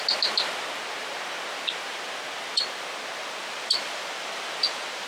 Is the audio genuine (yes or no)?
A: yes